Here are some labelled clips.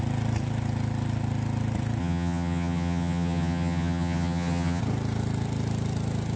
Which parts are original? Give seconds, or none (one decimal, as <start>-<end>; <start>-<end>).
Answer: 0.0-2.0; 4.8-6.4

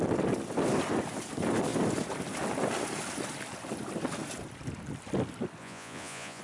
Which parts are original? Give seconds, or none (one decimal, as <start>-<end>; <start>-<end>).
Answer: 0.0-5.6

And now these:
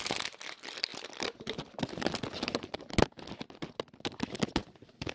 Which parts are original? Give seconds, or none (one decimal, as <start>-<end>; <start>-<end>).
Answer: 0.0-5.1

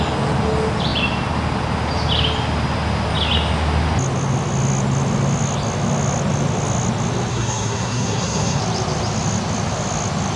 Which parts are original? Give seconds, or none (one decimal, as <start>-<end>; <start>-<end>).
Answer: 0.0-7.3; 8.6-10.4